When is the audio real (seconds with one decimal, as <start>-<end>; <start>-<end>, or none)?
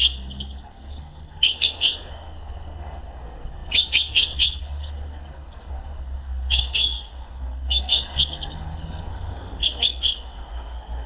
none